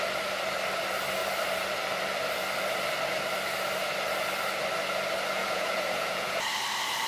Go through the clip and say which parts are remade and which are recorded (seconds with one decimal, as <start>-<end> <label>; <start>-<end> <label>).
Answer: 0.0-5.4 recorded; 5.4-6.4 remade; 6.4-7.1 recorded